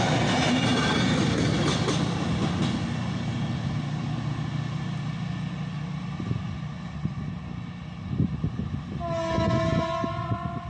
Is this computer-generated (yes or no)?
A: no